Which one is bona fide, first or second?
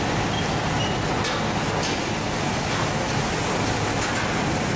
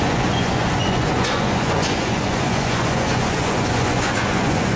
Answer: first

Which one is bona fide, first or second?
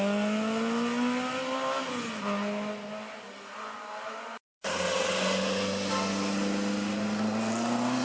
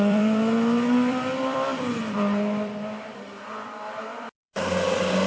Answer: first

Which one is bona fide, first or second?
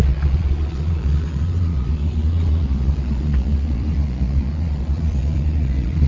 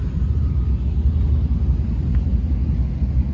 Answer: second